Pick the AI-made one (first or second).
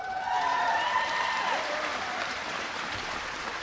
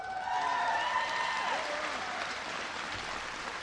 first